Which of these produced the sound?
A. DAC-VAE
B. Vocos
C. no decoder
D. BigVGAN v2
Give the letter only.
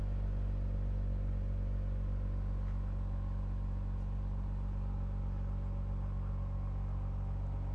C